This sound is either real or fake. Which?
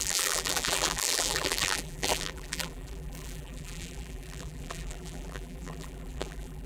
fake